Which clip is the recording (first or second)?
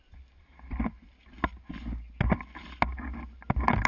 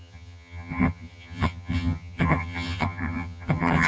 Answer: first